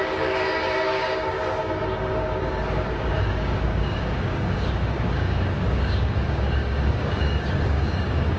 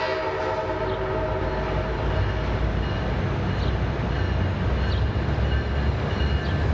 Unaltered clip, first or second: second